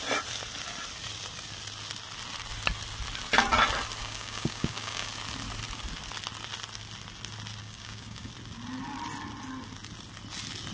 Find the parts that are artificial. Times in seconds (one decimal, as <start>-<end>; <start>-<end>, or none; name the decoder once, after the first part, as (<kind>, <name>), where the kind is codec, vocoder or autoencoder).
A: 4.0-5.1 (codec, DAC); 7.6-8.3